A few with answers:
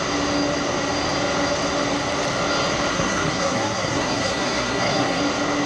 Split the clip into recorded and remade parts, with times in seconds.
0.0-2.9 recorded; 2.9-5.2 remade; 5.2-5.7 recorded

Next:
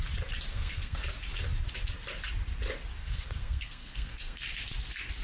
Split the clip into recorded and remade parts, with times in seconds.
0.0-0.5 recorded; 0.5-1.0 remade; 1.0-3.0 recorded; 3.0-4.4 remade; 4.4-5.2 recorded

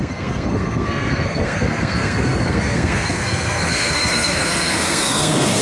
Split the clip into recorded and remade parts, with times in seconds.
0.0-5.6 remade

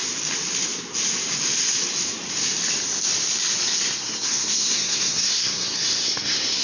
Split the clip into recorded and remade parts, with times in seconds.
0.0-3.8 recorded; 3.8-6.6 remade

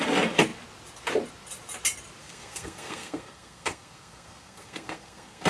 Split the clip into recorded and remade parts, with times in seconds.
0.0-2.2 recorded; 2.2-5.5 remade